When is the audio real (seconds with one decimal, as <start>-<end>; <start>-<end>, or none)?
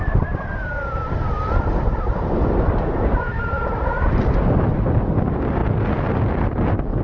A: 0.0-7.0